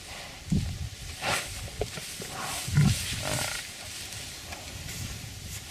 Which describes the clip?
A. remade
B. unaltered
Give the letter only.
B